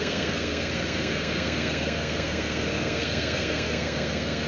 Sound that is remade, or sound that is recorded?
remade